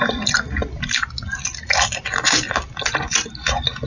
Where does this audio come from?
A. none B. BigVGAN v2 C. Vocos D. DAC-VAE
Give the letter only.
A